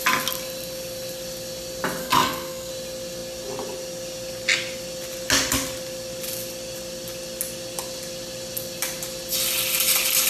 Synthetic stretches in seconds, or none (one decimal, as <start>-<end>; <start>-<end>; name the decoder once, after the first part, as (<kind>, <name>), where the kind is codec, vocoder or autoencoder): 2.0-2.7 (codec, SNAC)

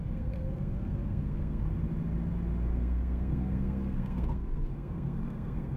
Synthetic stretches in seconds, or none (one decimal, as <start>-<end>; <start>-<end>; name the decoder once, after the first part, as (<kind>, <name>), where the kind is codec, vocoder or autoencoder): 0.0-1.8 (codec, SNAC); 2.7-5.8

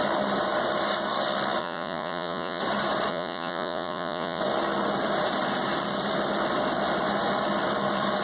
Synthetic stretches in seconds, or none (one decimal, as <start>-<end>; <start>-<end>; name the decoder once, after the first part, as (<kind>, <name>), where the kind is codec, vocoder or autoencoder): 1.6-2.6 (vocoder, Vocos); 3.1-4.4

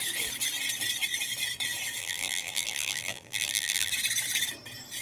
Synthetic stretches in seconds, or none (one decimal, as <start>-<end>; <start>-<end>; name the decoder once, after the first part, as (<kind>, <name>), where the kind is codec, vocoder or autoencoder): 2.0-3.9 (vocoder, BigVGAN v2)